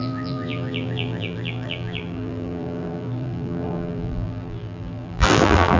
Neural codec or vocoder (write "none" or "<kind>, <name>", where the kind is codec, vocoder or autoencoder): vocoder, BigVGAN v2